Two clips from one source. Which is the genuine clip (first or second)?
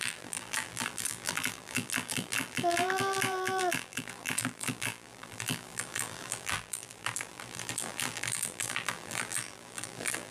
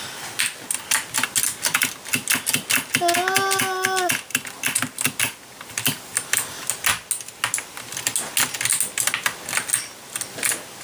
second